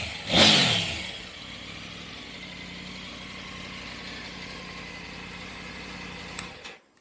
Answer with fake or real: real